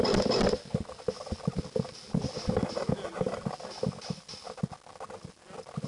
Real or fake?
real